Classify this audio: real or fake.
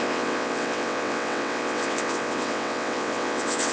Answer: fake